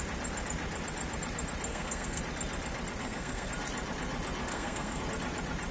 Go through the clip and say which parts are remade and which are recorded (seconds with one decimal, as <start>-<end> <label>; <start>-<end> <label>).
0.0-1.7 recorded; 1.7-2.2 remade; 2.2-3.0 recorded; 3.0-3.5 remade; 3.5-4.5 recorded; 4.5-5.0 remade; 5.0-5.7 recorded